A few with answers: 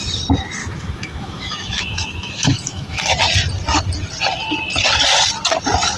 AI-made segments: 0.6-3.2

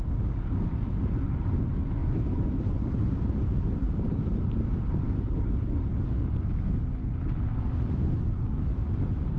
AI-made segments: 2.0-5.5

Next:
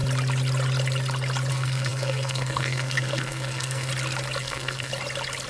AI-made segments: 1.5-3.9; 4.4-4.9